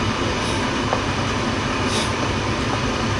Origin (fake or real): real